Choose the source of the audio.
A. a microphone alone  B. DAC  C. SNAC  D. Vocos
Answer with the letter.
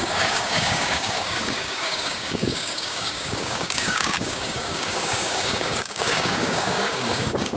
B